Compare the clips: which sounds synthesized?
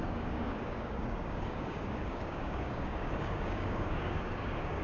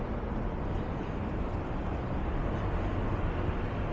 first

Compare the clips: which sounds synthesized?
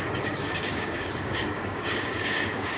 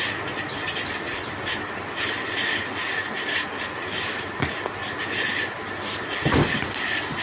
first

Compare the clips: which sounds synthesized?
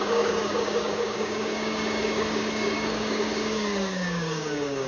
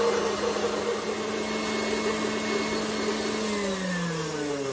first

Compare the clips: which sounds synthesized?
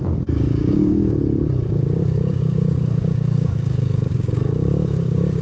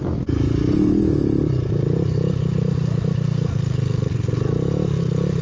first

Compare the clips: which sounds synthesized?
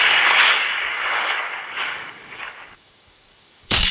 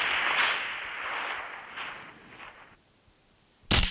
first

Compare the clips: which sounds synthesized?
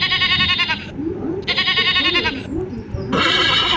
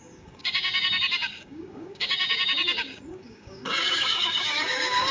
second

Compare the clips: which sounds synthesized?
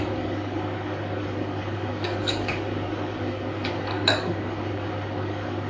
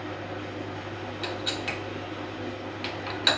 first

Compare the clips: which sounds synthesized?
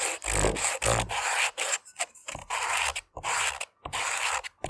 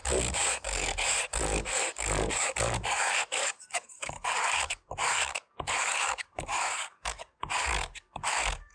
second